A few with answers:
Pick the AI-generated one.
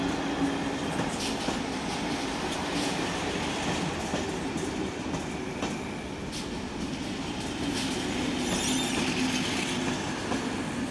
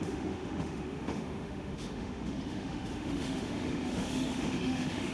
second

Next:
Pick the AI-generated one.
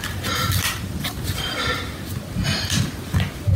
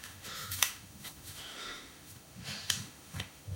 second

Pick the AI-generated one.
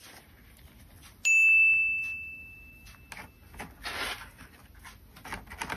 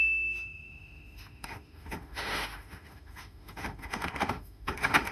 second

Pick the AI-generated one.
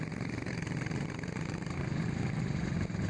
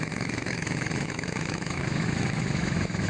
second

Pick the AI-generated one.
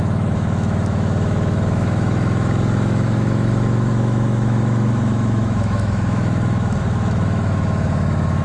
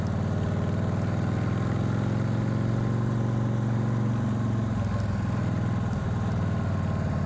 first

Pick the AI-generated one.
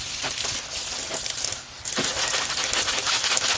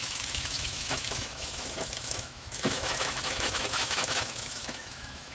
second